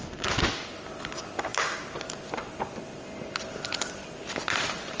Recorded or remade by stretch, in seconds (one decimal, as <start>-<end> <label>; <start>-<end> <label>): 0.0-5.0 recorded